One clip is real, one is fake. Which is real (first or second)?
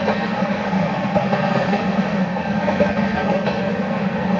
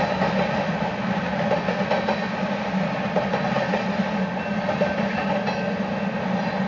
second